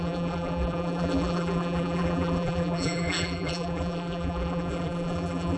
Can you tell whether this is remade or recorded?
remade